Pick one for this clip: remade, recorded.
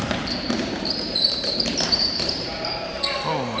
remade